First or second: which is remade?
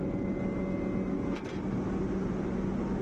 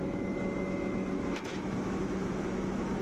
second